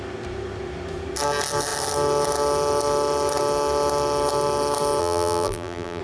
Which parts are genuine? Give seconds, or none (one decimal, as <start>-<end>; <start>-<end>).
0.0-5.0